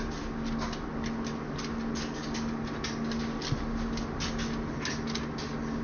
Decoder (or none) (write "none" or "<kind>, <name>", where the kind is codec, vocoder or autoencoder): none